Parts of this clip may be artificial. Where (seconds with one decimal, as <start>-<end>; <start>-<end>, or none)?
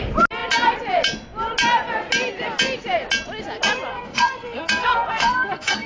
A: 3.9-5.9